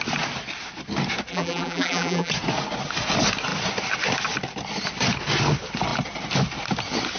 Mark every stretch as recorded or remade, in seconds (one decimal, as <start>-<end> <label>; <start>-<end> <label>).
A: 0.0-1.3 recorded; 1.3-2.3 remade; 2.3-7.2 recorded